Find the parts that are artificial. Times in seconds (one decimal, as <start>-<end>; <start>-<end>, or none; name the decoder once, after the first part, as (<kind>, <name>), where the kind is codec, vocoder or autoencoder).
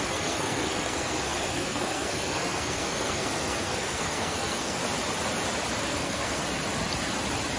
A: 0.0-4.8 (codec, SNAC); 5.9-6.4